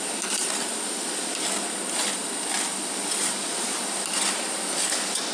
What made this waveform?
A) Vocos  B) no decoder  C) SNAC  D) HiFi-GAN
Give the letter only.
B